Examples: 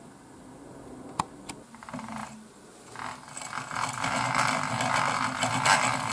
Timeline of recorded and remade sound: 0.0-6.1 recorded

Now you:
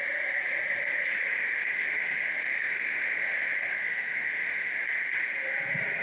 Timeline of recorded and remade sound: 0.0-1.4 recorded; 1.4-4.8 remade; 4.8-6.0 recorded